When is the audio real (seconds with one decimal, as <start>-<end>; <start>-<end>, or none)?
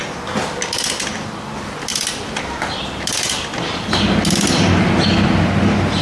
0.0-6.0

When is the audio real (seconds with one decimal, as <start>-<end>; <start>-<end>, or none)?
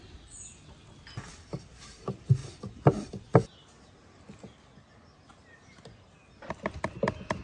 0.0-7.4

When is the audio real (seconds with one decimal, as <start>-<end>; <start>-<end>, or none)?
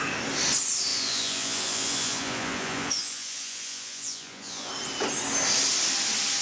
0.0-0.9; 4.7-6.4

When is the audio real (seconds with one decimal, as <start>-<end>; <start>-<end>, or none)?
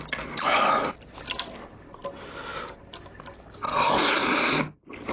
0.0-5.1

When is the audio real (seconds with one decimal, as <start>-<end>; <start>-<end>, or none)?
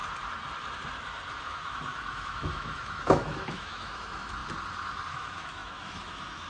0.0-1.4; 4.4-5.1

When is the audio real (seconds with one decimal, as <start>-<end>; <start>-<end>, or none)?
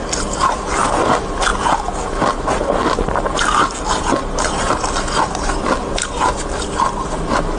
0.0-7.6